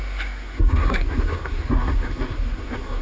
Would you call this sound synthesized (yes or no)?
yes